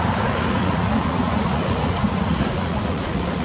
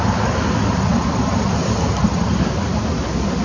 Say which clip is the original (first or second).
second